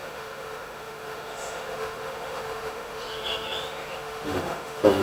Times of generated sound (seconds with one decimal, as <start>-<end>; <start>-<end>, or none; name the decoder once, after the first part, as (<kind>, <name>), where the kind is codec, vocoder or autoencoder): 0.0-5.0 (autoencoder, DAC-VAE)